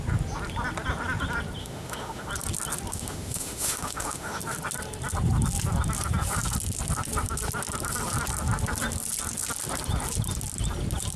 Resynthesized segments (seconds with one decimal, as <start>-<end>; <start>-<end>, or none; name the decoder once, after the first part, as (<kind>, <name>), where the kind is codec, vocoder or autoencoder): 1.6-2.3 (autoencoder, DAC-VAE); 2.9-4.4